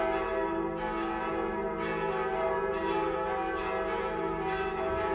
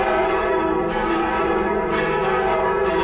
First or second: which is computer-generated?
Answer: second